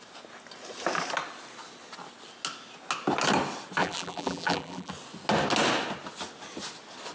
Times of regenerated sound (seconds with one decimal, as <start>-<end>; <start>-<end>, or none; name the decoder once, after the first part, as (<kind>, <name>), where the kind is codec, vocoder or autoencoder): 3.8-4.9 (vocoder, BigVGAN v2)